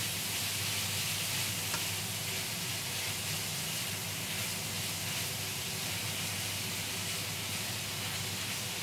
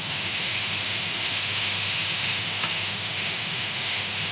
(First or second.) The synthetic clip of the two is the second